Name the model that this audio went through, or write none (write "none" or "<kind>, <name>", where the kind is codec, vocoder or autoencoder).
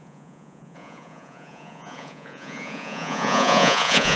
vocoder, Vocos